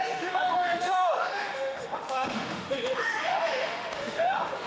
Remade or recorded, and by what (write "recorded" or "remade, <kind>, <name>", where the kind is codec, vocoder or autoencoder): remade, autoencoder, DAC-VAE